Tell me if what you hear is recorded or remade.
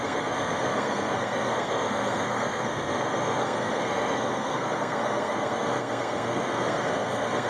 remade